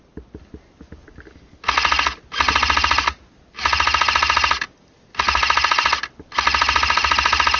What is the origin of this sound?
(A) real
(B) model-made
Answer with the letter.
A